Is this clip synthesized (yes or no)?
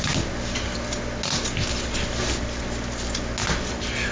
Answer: no